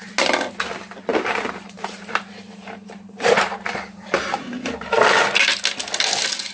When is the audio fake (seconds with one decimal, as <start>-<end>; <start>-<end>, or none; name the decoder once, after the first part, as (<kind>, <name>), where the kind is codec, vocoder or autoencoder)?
1.1-5.0 (vocoder, BigVGAN v2)